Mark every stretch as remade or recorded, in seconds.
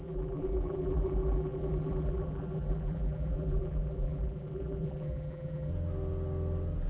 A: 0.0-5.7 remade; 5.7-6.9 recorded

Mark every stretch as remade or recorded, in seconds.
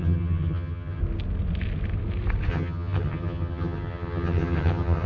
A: 0.0-1.0 remade; 1.0-2.5 recorded; 2.5-5.1 remade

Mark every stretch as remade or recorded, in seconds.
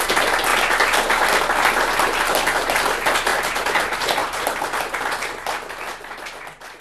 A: 0.0-6.8 recorded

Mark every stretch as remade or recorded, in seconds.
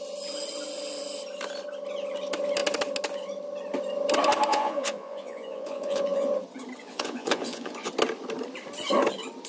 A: 0.0-4.5 recorded; 4.5-6.3 remade; 6.3-6.8 recorded; 6.8-7.9 remade; 7.9-9.5 recorded